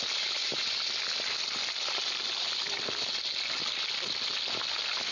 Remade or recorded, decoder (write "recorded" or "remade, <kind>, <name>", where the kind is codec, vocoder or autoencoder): recorded